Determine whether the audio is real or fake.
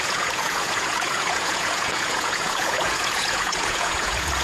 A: fake